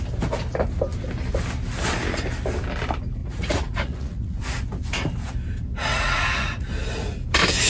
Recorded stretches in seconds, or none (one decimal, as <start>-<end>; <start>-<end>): 0.0-3.2; 4.4-5.9; 6.7-7.7